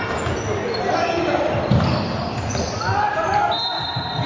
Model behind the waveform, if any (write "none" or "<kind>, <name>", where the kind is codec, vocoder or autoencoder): none